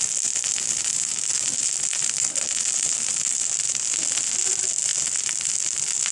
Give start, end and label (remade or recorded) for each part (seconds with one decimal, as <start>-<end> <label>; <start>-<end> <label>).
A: 0.0-6.1 recorded